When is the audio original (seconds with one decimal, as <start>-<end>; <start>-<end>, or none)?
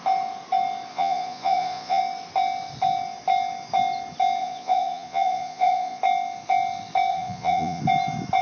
0.0-0.9; 2.0-4.4; 6.0-7.1; 7.8-8.4